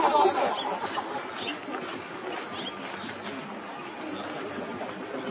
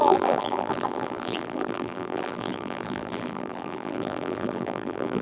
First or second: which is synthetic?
second